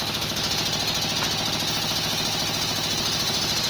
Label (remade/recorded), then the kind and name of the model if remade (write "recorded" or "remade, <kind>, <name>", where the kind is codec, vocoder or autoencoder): recorded